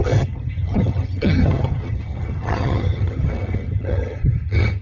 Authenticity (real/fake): fake